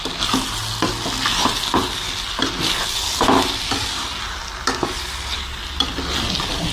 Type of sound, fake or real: real